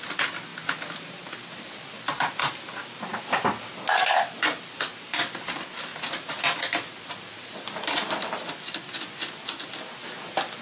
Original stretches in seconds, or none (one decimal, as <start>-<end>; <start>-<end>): 0.0-10.6